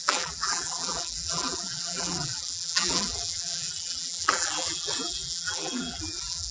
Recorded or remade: remade